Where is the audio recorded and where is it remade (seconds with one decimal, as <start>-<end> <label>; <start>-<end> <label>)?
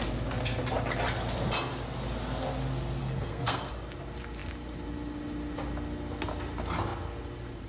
0.0-3.0 recorded; 3.0-3.7 remade; 3.7-7.7 recorded